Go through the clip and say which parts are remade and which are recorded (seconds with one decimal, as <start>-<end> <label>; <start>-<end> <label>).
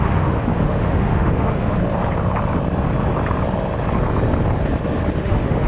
0.0-1.8 remade; 1.8-5.2 recorded; 5.2-5.7 remade